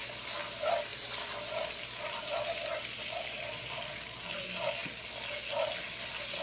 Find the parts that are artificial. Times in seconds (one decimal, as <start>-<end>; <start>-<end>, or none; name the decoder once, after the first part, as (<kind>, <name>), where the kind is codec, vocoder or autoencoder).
none